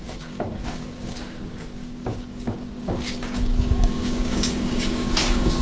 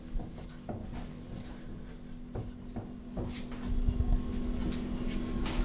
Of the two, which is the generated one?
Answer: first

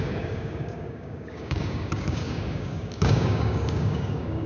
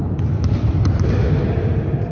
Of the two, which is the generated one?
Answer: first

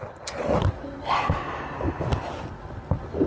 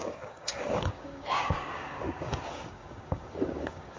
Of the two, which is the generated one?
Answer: second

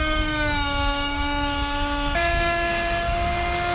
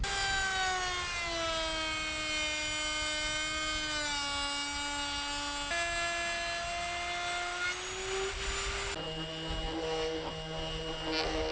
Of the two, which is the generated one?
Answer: first